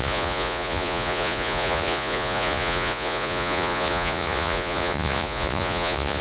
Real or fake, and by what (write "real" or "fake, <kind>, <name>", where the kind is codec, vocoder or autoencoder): fake, vocoder, Vocos